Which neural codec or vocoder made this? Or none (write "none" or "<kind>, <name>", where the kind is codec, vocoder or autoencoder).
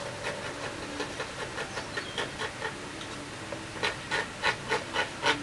none